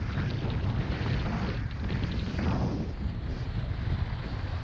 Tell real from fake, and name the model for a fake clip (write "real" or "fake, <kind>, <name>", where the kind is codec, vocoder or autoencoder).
real